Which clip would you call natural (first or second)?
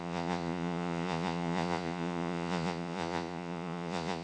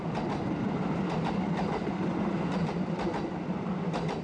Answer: second